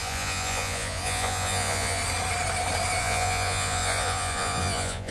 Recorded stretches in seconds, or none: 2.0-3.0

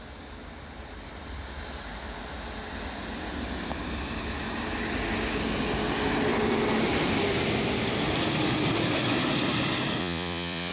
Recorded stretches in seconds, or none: 0.0-10.0

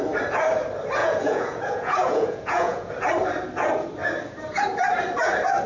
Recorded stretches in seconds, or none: 0.0-1.0; 2.9-5.7